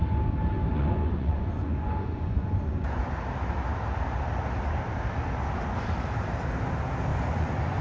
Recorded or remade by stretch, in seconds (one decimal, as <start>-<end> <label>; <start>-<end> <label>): 0.0-0.7 recorded; 0.7-3.0 remade; 3.0-7.1 recorded; 7.1-7.8 remade